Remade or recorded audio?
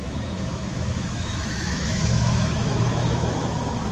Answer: remade